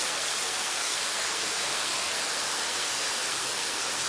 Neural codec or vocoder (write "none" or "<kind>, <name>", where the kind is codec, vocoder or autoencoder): codec, SNAC